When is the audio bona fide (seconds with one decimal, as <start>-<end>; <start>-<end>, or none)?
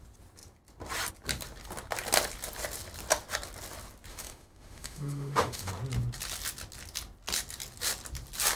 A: 0.0-4.1; 5.7-8.6